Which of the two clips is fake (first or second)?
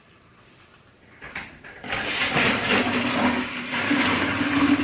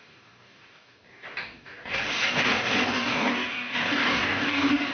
second